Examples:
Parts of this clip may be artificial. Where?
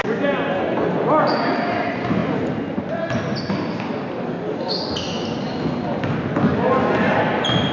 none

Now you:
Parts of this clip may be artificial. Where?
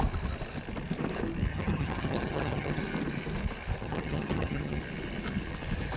1.5-2.8 (vocoder, HiFi-GAN); 3.8-4.8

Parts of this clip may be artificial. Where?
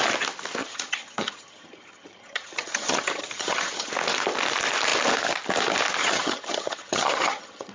0.6-3.9 (vocoder, HiFi-GAN); 6.0-7.7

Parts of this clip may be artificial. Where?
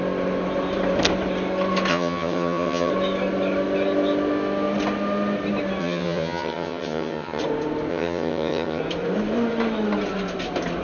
1.9-2.9 (vocoder, HiFi-GAN); 5.8-7.4; 7.9-8.8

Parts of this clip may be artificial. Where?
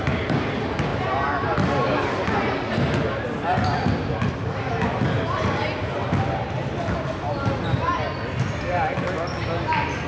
none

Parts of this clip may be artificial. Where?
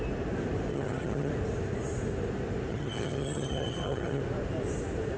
0.7-1.3 (vocoder, HiFi-GAN); 2.7-4.2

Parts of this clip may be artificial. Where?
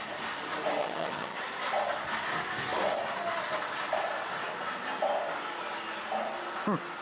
0.8-1.4 (vocoder, HiFi-GAN)